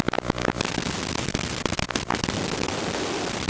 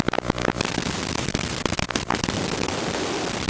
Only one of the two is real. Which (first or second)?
first